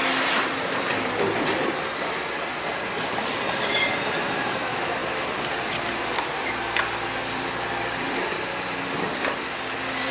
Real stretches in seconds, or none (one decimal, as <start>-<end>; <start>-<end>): 0.0-1.7; 5.0-5.6